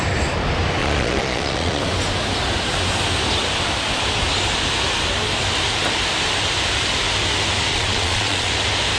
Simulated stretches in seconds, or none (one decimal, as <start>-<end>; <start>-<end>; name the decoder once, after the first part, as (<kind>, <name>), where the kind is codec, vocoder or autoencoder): 0.8-1.8 (vocoder, Vocos); 7.7-8.5